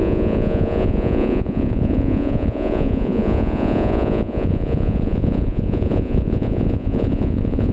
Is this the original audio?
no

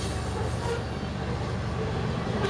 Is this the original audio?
yes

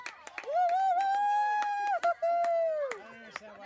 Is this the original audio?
yes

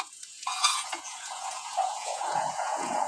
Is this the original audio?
no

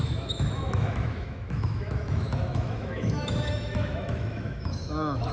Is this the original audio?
no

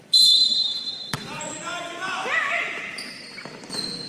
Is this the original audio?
no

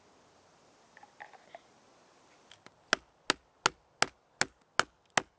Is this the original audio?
yes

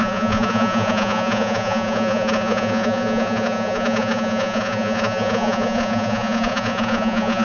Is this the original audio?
no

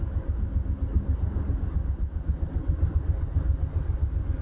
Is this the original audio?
yes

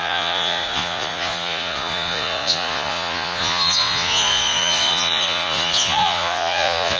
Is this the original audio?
no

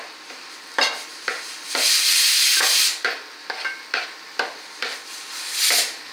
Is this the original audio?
yes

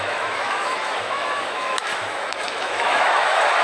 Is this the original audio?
no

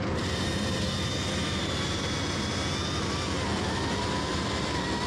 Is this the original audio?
yes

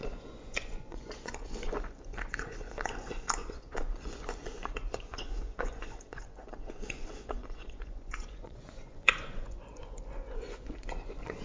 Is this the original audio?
no